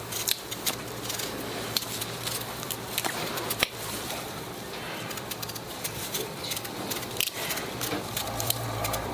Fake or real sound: fake